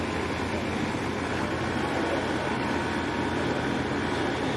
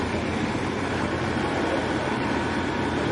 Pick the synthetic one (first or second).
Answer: second